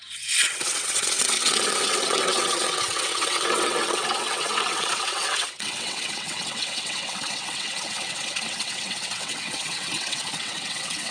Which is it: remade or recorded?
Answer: remade